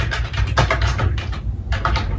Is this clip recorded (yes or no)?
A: no